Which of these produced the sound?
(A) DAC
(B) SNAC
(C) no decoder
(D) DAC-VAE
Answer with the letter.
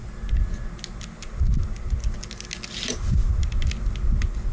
C